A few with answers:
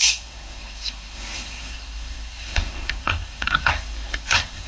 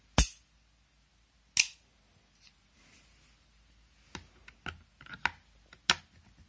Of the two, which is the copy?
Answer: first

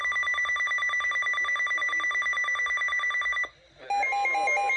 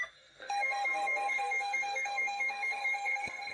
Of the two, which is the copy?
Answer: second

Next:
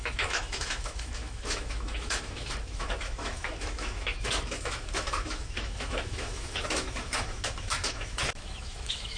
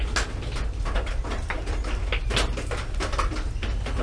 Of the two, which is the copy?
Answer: first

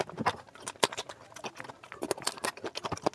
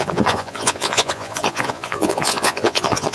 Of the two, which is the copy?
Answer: second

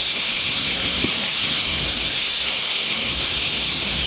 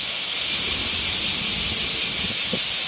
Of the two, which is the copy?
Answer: first